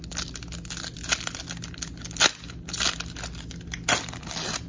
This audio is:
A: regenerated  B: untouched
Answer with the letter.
B